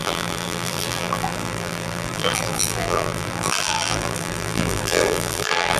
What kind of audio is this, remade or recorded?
remade